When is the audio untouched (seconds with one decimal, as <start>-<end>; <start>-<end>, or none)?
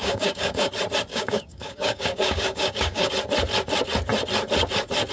0.7-1.1; 3.1-5.1